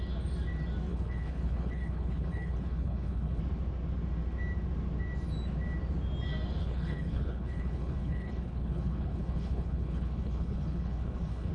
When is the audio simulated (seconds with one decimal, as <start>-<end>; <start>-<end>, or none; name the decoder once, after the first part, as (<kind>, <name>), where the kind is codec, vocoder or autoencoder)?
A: 0.9-3.4 (codec, HILCodec); 6.6-11.5